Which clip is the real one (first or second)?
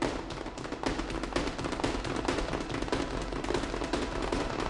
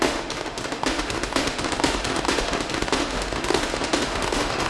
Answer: first